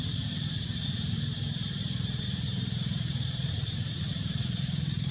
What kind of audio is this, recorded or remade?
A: remade